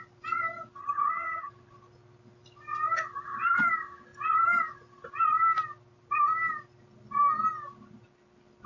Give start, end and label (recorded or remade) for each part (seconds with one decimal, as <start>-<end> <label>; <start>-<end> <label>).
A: 0.0-0.8 recorded; 0.8-1.5 remade; 1.5-8.7 recorded